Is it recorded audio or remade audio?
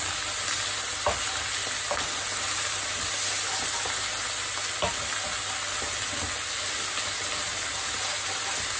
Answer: recorded